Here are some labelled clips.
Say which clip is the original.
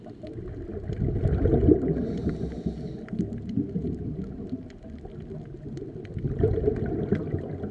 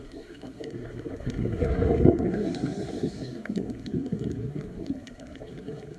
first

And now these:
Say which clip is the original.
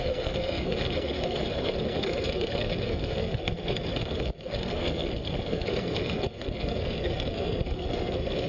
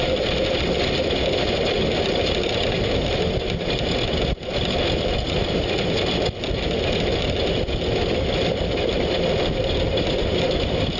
second